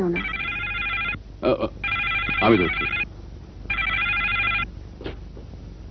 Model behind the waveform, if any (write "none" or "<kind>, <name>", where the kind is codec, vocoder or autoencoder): none